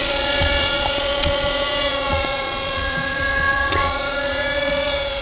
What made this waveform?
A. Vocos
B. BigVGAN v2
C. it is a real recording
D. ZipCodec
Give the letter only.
A